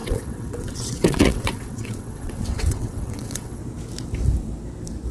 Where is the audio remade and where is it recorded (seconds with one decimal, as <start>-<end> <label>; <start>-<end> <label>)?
0.0-3.6 remade; 3.6-5.1 recorded